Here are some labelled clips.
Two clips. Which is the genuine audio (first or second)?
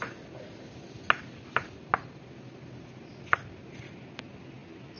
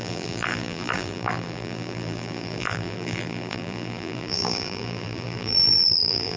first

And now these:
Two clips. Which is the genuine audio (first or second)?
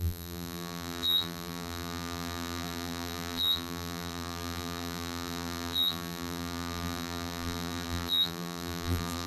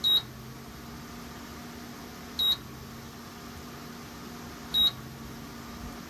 second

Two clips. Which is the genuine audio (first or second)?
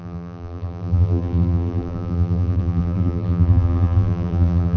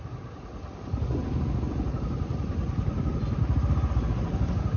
second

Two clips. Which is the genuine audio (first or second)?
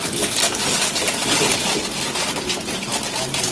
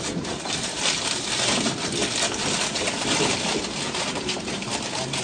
first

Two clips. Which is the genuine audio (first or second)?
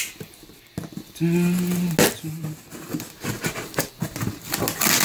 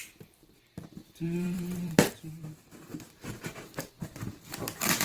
first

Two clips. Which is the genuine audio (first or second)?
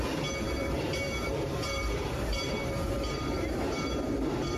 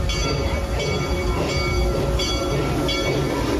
second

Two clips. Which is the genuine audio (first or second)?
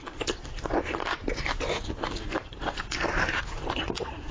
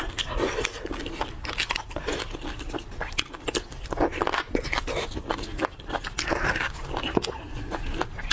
second